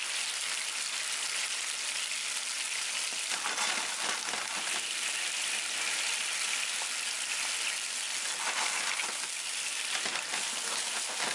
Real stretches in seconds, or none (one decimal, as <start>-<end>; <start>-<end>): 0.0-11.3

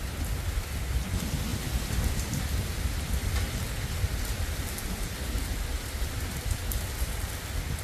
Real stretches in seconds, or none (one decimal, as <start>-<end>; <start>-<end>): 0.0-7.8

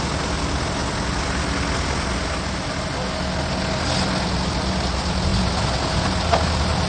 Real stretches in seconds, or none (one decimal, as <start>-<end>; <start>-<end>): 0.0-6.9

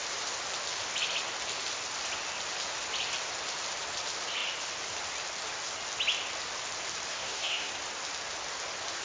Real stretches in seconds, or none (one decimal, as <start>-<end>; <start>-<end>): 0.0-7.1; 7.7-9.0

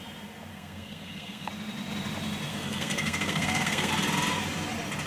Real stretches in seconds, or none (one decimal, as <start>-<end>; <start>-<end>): 0.0-0.5; 1.5-2.5; 3.9-5.1

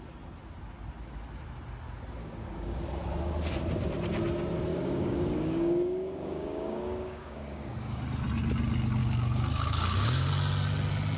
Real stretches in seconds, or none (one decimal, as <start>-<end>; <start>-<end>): 0.0-2.2; 2.8-4.7; 8.0-9.0; 10.3-11.2

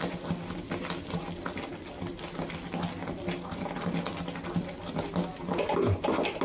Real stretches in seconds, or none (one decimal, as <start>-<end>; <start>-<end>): 0.0-6.4